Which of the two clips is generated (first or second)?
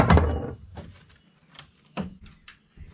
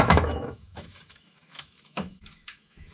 second